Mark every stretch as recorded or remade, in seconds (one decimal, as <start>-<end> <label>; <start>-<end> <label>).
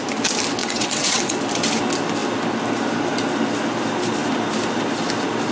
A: 0.0-0.6 recorded; 0.6-1.4 remade; 1.4-5.5 recorded